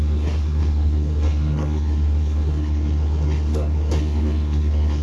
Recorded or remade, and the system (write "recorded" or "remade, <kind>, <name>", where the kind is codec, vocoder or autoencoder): remade, codec, SNAC